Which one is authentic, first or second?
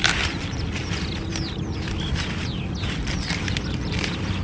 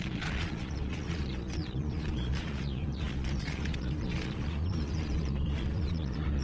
first